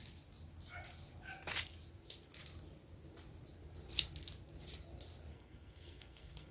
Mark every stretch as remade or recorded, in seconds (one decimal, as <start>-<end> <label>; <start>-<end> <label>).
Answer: 0.0-5.3 recorded; 5.3-6.5 remade